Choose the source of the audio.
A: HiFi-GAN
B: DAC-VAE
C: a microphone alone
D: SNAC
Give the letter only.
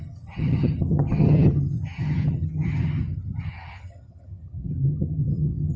A